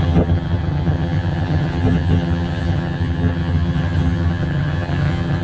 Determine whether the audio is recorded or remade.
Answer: remade